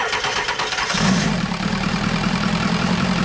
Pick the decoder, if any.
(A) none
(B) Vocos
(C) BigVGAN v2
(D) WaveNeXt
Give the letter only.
C